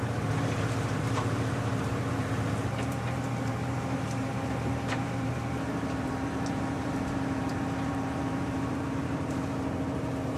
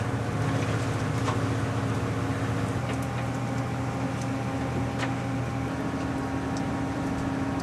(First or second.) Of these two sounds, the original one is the second